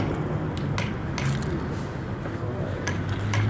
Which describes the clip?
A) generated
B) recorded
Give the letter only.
B